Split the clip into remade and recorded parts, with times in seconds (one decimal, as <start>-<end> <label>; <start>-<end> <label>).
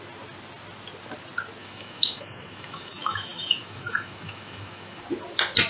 0.0-1.6 recorded; 1.6-5.0 remade; 5.0-5.7 recorded